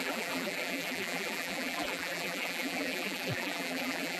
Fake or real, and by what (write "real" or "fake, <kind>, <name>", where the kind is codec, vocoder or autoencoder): fake, vocoder, BigVGAN v2